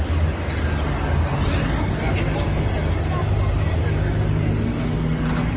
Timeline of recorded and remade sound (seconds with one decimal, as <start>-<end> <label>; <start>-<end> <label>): 0.0-5.6 recorded